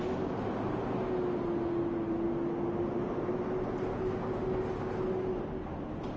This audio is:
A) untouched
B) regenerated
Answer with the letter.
A